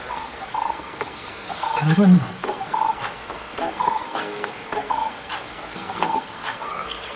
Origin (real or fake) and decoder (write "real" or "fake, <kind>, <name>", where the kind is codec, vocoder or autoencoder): fake, codec, SNAC